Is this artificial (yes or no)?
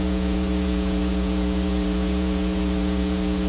yes